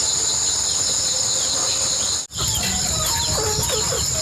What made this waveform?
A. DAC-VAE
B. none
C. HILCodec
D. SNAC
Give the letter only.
B